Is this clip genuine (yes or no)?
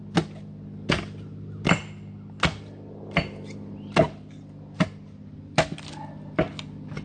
yes